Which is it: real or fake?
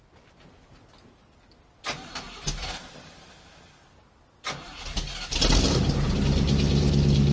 real